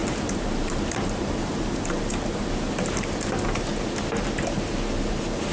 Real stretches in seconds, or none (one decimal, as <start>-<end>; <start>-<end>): 3.3-5.5